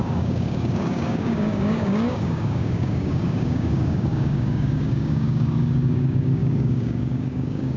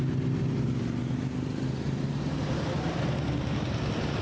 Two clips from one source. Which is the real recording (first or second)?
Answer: second